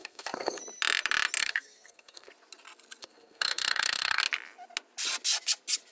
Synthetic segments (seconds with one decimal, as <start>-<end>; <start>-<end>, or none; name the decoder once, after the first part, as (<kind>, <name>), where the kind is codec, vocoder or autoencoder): 0.0-0.6 (codec, SNAC); 1.4-2.3; 3.0-4.2